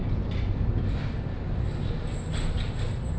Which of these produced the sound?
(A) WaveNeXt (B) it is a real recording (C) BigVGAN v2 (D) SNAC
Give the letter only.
B